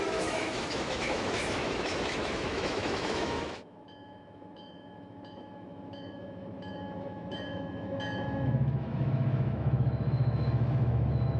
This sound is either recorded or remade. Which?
remade